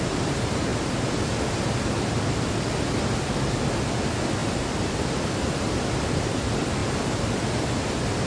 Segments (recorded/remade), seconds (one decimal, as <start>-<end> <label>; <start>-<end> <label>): 0.0-8.3 recorded